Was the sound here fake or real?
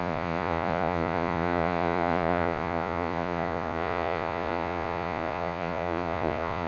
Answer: fake